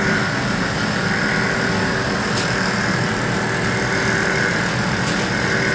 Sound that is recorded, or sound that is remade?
recorded